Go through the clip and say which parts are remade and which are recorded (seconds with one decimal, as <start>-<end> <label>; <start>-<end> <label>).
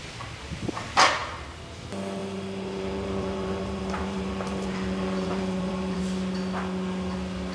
0.0-2.2 recorded; 2.2-6.0 remade; 6.0-7.5 recorded